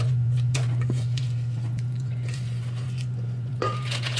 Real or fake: fake